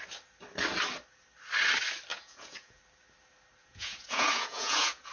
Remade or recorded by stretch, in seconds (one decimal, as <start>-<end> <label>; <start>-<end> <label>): 0.0-2.1 recorded; 2.1-2.8 remade; 2.8-3.6 recorded; 3.6-5.1 remade